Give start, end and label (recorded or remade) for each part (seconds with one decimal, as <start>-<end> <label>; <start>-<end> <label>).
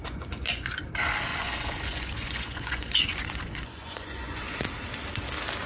0.0-0.7 remade; 0.7-1.3 recorded; 1.3-4.7 remade; 4.7-5.7 recorded